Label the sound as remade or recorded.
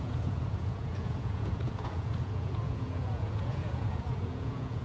remade